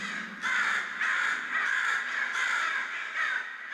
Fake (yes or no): no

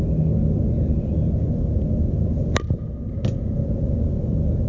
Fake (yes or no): no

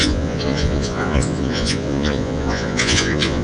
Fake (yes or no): yes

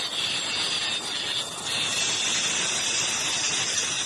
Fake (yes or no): no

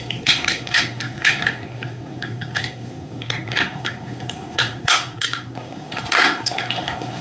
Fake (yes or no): yes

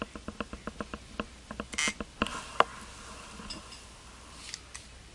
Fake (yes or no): no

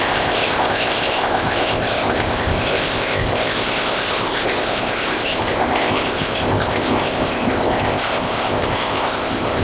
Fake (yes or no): yes